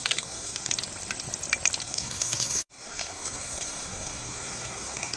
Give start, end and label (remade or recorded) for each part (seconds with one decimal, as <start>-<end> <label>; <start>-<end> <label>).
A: 0.0-0.7 remade; 0.7-1.8 recorded; 1.8-5.2 remade